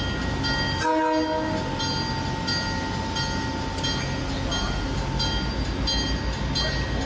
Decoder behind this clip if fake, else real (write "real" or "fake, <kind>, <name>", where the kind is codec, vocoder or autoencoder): real